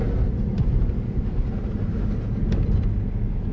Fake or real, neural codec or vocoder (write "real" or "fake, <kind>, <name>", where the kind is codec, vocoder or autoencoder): real